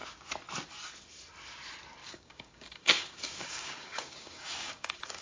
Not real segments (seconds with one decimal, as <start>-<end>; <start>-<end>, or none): 2.0-5.2